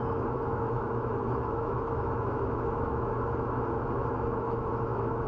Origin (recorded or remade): remade